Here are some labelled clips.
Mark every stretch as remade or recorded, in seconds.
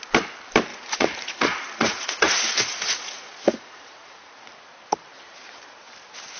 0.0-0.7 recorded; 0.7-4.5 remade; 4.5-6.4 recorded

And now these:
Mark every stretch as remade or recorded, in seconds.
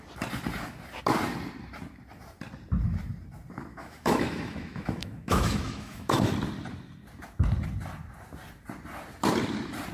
0.0-3.7 recorded; 3.7-6.3 remade; 6.3-9.9 recorded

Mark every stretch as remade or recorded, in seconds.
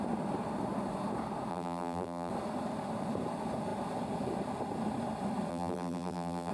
0.0-1.5 recorded; 1.5-2.3 remade; 2.3-5.5 recorded; 5.5-6.5 remade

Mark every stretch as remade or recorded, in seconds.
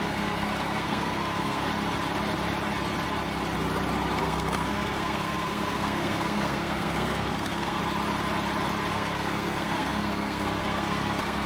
0.0-1.7 remade; 1.7-4.2 recorded; 4.2-7.8 remade; 7.8-8.9 recorded; 8.9-11.5 remade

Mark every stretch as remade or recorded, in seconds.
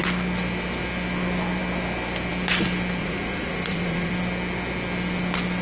0.0-3.0 recorded; 3.0-4.1 remade; 4.1-5.6 recorded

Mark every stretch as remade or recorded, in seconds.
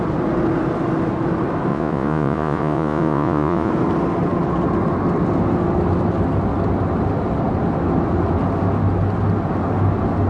0.0-1.7 recorded; 1.7-3.7 remade; 3.7-10.3 recorded